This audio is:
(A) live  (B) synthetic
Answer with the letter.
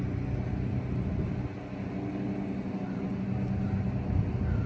A